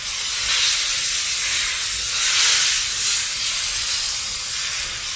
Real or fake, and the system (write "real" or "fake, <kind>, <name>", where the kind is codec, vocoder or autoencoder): real